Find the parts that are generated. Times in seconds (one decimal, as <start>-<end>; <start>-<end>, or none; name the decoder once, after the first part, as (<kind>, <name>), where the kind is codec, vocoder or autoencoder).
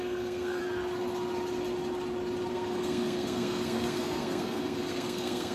0.0-0.6 (codec, SNAC); 2.5-5.5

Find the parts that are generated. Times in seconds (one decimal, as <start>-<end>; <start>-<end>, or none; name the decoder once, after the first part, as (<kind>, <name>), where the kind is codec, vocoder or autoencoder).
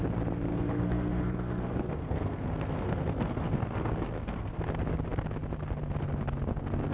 0.5-4.6 (codec, SNAC)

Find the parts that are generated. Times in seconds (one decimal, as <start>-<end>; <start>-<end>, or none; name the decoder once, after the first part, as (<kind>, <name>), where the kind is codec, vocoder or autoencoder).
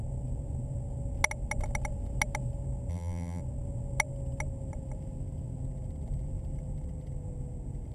2.9-3.4 (vocoder, BigVGAN v2)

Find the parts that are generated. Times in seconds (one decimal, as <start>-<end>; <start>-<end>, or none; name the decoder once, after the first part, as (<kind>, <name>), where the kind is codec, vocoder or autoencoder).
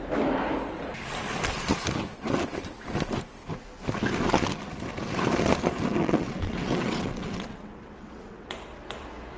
6.0-8.5 (vocoder, WaveNeXt)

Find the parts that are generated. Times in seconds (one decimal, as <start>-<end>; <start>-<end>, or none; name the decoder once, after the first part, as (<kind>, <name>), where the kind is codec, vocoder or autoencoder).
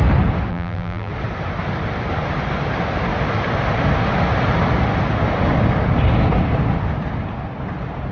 0.5-1.1 (vocoder, BigVGAN v2)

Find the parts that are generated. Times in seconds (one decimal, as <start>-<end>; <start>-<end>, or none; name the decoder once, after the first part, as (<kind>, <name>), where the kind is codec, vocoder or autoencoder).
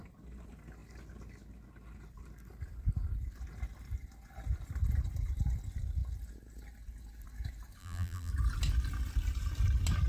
7.8-8.3 (vocoder, BigVGAN v2)